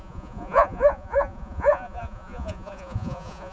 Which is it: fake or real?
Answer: fake